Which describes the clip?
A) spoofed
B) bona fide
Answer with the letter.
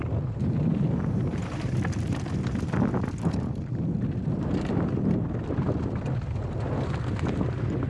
B